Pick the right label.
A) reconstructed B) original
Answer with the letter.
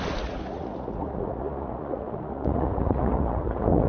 A